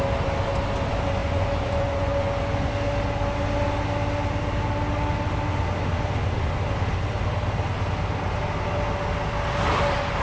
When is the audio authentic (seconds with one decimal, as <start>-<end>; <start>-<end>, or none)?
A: 0.0-1.2; 2.7-10.2